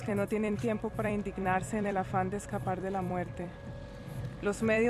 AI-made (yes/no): yes